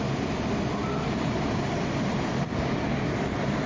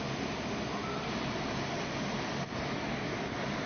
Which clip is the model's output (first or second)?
first